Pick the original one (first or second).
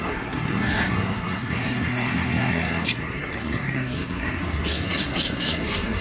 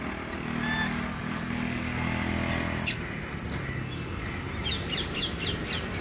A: second